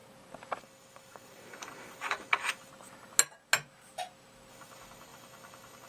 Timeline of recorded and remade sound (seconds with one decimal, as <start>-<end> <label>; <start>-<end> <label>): 0.0-0.6 recorded; 0.6-2.7 remade; 2.7-4.5 recorded; 4.5-5.9 remade